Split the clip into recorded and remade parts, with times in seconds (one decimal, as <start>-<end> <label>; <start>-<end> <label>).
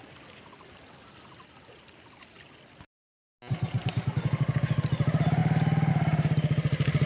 0.0-7.1 recorded